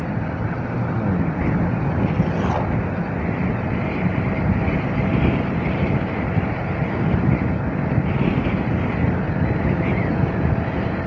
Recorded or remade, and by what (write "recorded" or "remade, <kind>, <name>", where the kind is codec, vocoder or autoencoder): recorded